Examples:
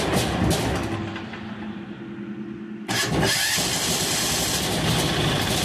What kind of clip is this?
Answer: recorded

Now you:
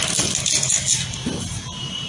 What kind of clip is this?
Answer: recorded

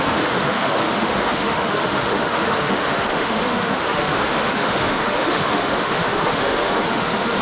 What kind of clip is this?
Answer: remade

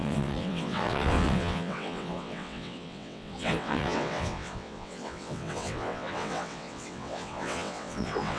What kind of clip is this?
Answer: remade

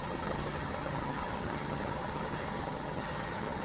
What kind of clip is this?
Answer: remade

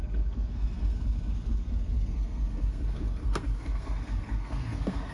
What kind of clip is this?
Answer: remade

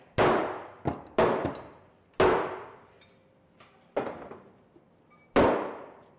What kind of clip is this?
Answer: recorded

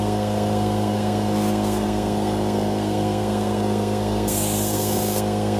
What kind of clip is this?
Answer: remade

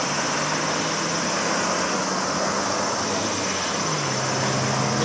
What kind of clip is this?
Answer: recorded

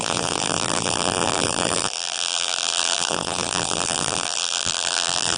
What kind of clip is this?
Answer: remade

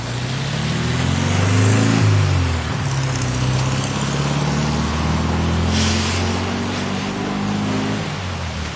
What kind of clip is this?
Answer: recorded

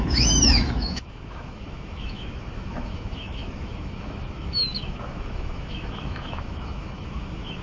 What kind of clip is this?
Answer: remade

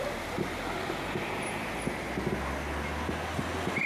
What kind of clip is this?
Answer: recorded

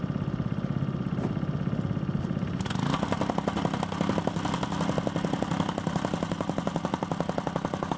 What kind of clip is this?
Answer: recorded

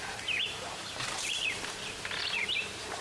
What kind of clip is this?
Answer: remade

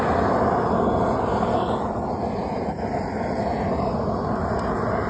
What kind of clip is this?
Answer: recorded